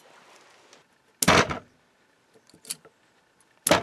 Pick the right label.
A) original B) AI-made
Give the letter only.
A